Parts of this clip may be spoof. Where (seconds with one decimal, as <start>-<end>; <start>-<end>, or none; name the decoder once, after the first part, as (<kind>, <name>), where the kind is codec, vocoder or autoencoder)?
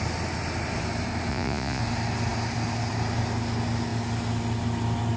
1.3-1.8 (vocoder, Vocos)